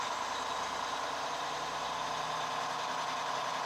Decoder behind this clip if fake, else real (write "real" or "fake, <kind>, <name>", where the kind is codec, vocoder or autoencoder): real